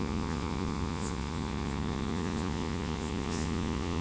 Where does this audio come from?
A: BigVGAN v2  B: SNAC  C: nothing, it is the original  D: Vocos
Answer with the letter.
D